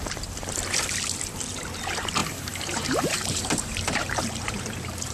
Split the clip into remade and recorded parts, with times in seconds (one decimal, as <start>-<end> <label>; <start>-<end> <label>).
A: 0.0-2.2 recorded; 2.2-4.6 remade; 4.6-5.1 recorded